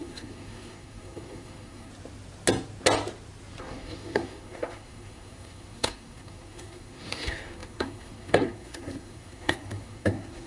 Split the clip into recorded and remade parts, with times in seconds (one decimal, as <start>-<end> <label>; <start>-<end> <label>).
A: 0.0-1.9 remade; 1.9-3.6 recorded; 3.6-10.5 remade